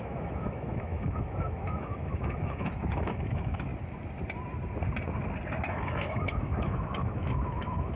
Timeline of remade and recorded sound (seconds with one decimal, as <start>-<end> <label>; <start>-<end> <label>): 0.0-3.7 remade; 3.7-5.7 recorded; 5.7-8.0 remade